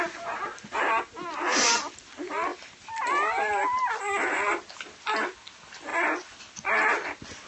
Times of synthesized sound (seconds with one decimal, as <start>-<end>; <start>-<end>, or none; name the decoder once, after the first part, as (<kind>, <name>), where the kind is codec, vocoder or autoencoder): none